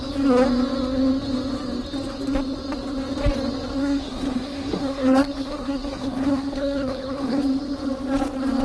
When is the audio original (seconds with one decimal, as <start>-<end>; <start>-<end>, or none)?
0.0-3.8; 7.4-8.6